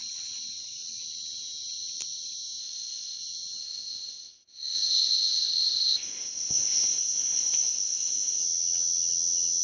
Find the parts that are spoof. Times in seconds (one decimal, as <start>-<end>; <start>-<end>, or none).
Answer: 2.6-3.2; 3.6-8.4